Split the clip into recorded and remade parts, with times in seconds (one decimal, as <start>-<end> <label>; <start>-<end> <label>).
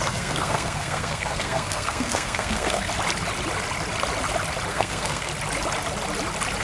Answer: 0.0-2.8 remade; 2.8-4.7 recorded; 4.7-5.3 remade; 5.3-6.6 recorded